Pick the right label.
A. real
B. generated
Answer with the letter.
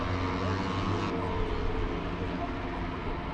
A